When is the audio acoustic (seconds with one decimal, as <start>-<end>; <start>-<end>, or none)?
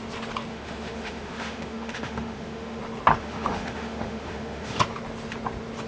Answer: 0.0-0.5; 2.8-3.2; 4.8-5.9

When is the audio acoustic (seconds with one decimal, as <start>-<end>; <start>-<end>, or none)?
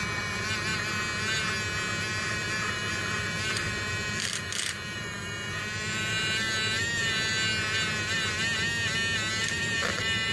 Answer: 0.7-2.0; 7.5-9.3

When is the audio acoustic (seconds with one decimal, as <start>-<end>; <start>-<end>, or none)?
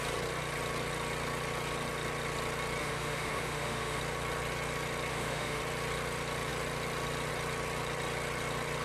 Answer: 0.0-2.8; 4.0-5.1; 5.6-8.8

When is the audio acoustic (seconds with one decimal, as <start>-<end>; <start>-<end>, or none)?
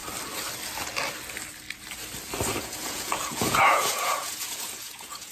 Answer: 0.0-2.6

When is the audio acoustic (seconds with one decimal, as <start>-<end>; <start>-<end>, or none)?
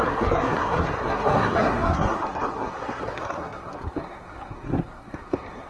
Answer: none